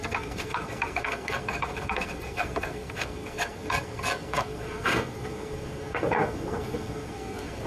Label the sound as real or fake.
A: fake